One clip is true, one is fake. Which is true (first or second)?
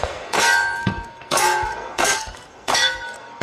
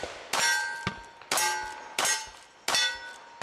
second